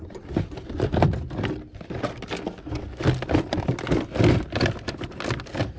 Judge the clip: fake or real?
real